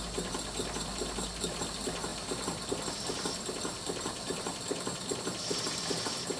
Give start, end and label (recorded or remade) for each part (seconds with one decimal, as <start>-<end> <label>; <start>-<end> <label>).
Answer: 0.0-6.4 recorded